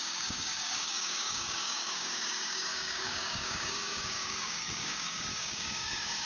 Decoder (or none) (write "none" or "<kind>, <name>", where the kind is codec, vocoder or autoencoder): codec, DAC